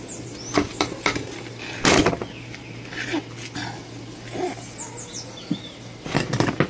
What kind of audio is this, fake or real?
real